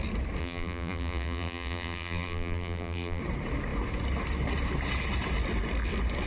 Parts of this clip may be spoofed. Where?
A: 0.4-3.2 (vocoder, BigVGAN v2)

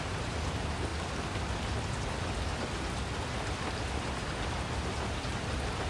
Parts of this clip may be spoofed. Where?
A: none

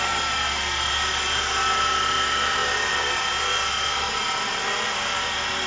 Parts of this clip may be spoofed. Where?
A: none

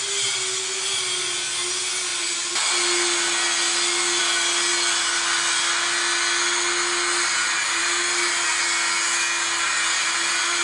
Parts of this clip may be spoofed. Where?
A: none

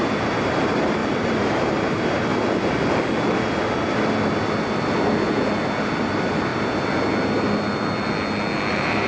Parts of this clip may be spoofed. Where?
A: 0.0-2.3 (vocoder, BigVGAN v2); 6.0-6.5; 8.7-9.1

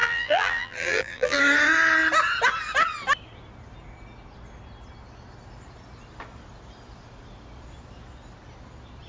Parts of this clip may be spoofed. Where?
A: 0.0-1.4 (vocoder, BigVGAN v2)